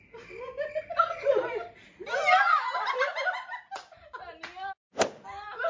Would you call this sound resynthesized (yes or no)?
no